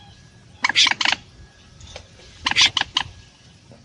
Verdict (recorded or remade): recorded